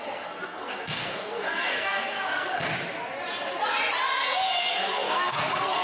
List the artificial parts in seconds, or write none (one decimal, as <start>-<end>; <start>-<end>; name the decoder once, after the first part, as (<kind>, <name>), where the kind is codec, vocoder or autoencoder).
0.0-2.7 (codec, SNAC); 4.6-5.8